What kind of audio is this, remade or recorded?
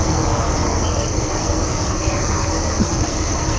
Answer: remade